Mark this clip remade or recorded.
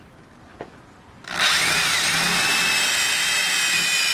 recorded